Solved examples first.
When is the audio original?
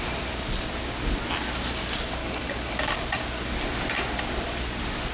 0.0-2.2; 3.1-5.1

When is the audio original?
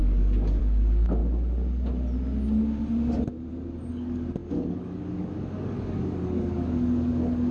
1.2-3.9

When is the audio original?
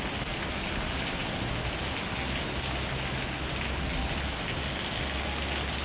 0.0-5.8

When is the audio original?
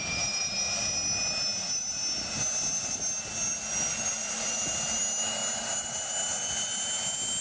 0.0-7.4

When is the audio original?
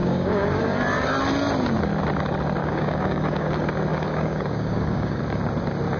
0.6-2.6; 3.5-3.9; 5.2-6.0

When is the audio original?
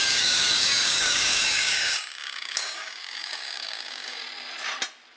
4.2-5.2